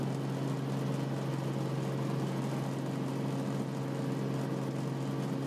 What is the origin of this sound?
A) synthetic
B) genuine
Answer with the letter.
B